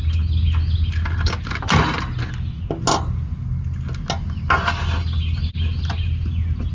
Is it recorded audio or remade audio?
recorded